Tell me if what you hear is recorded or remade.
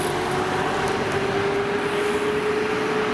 recorded